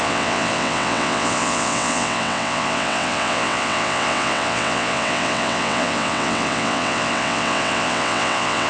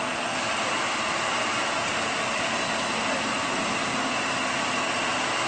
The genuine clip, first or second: second